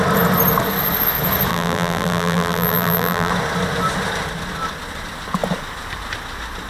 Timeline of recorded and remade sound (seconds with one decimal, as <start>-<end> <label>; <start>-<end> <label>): 0.0-1.5 recorded; 1.5-3.3 remade; 3.3-6.7 recorded